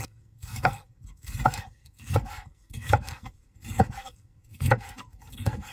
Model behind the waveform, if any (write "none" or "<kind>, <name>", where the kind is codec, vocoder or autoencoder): codec, SNAC